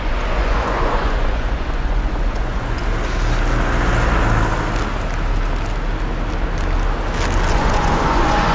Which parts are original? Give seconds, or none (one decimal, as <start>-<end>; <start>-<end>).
2.8-7.5